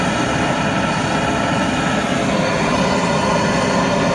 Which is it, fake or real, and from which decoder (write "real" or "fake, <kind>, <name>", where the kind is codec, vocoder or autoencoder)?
real